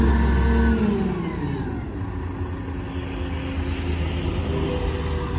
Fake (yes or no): no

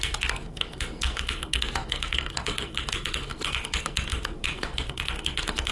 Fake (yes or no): yes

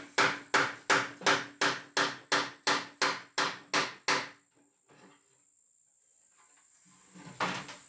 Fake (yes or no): no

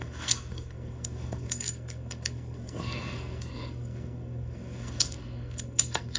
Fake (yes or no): yes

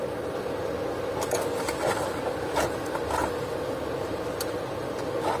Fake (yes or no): no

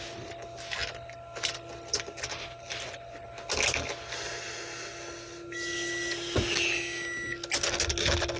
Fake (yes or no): no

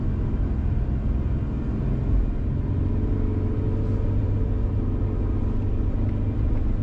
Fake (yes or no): no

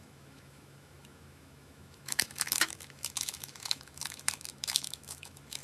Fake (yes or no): yes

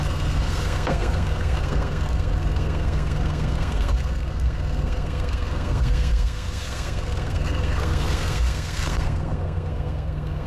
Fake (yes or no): yes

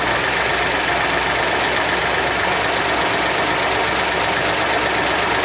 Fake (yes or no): no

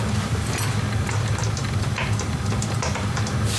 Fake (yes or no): no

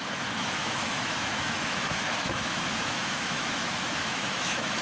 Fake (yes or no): yes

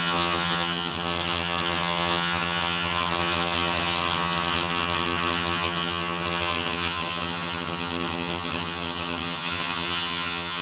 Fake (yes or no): yes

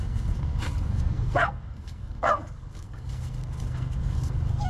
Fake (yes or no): yes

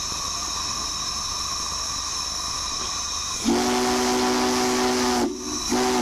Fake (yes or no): no